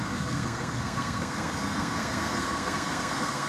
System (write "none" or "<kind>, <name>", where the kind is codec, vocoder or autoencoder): codec, SNAC